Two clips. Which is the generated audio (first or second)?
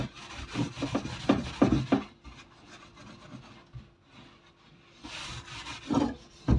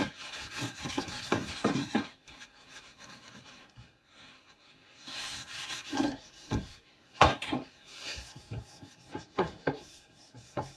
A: second